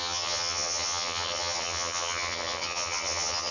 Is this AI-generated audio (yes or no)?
yes